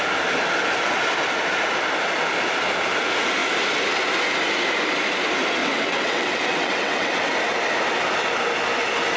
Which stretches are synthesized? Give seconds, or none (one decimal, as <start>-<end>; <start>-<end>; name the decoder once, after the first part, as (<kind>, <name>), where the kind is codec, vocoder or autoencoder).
5.6-7.3 (vocoder, WaveNeXt)